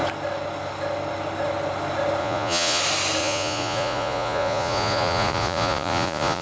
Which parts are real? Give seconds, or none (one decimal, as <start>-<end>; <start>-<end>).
0.0-2.2; 2.8-3.2